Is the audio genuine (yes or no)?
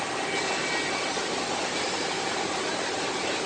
yes